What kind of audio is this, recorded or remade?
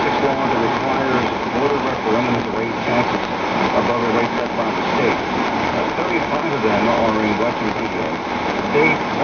recorded